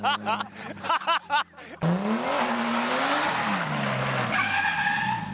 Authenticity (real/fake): real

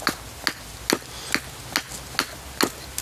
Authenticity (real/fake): real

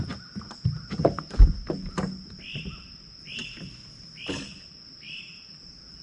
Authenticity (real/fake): real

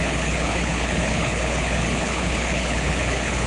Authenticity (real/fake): fake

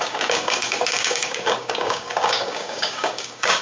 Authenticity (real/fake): fake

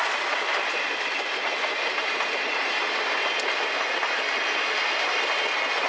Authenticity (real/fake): real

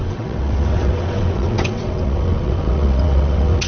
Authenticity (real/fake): fake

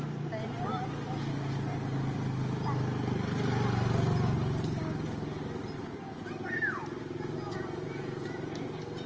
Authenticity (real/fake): real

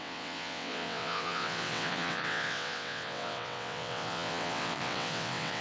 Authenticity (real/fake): fake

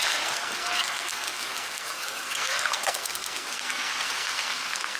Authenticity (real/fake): fake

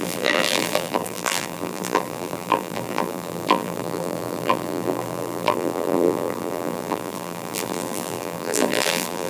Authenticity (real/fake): fake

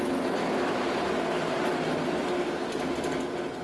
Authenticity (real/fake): real